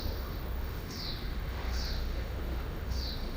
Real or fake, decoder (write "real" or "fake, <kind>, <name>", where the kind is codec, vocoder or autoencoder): fake, autoencoder, DAC-VAE